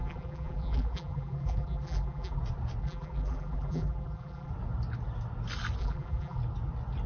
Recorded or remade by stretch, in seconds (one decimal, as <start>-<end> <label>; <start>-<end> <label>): 0.0-2.4 remade; 2.4-2.8 recorded; 2.8-4.5 remade; 4.5-5.8 recorded; 5.8-6.4 remade; 6.4-7.1 recorded